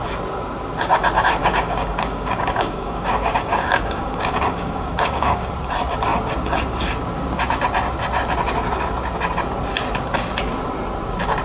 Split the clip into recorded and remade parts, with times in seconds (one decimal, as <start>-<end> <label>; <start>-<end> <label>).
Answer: 0.0-1.4 recorded; 1.4-5.5 remade; 5.5-11.4 recorded